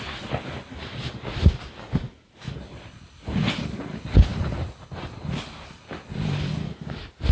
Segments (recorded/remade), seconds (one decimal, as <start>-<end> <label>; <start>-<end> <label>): 0.0-0.7 remade; 0.7-2.6 recorded; 2.6-6.6 remade; 6.6-7.3 recorded

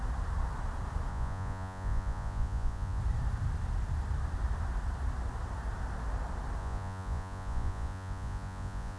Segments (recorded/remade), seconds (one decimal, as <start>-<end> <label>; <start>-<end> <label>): 0.0-1.1 recorded; 1.1-3.0 remade; 3.0-6.6 recorded; 6.6-9.0 remade

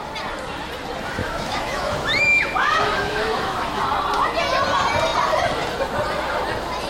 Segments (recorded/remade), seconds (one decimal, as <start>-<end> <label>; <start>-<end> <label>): 0.0-1.2 recorded; 1.2-3.8 remade; 3.8-6.9 recorded

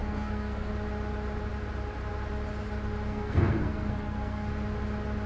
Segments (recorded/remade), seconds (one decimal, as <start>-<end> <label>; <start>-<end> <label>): 0.0-0.7 remade; 0.7-3.1 recorded; 3.1-4.5 remade; 4.5-5.3 recorded

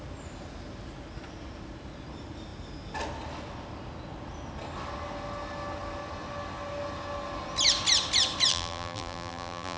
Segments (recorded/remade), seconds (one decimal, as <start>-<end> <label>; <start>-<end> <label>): 0.0-8.5 recorded; 8.5-9.8 remade